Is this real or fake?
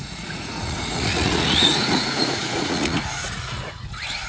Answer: fake